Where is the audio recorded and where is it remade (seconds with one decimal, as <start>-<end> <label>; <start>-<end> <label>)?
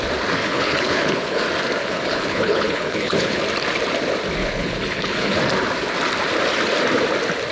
0.0-0.4 recorded; 0.4-1.4 remade; 1.4-1.8 recorded; 1.8-3.4 remade; 3.4-4.4 recorded; 4.4-5.4 remade; 5.4-7.5 recorded